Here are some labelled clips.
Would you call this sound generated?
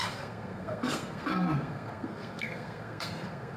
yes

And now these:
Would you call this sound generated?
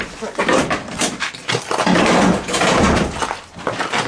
no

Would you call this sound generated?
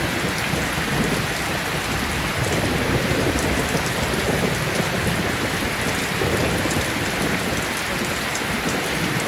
no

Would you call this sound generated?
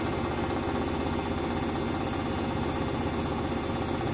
no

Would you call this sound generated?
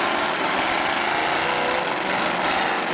no